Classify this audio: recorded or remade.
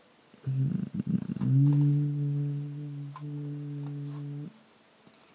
recorded